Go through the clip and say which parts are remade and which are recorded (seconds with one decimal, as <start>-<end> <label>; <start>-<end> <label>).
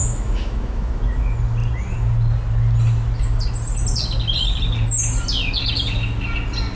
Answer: 0.0-1.0 remade; 1.0-6.8 recorded